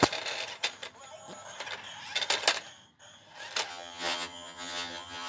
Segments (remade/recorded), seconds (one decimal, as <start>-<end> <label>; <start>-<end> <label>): 0.0-3.7 recorded; 3.7-5.3 remade